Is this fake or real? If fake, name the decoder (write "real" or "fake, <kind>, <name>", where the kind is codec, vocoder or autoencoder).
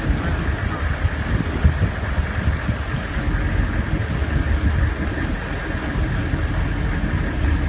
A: real